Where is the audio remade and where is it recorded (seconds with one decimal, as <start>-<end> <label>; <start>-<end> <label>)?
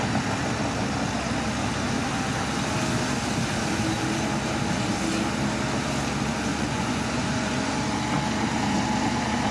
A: 0.0-6.5 recorded; 6.5-7.7 remade; 7.7-9.5 recorded